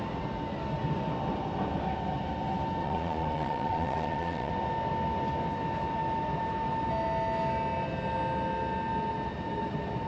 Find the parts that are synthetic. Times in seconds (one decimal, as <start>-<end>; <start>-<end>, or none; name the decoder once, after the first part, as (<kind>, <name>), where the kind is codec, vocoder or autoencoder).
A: 2.8-4.5 (vocoder, Vocos)